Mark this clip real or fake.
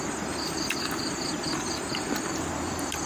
fake